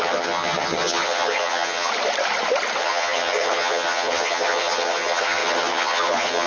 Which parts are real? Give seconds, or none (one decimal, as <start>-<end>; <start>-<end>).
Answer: 1.9-2.8